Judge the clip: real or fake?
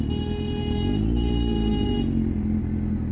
real